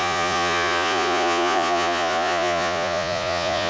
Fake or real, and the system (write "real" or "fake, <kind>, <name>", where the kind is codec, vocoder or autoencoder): fake, vocoder, Vocos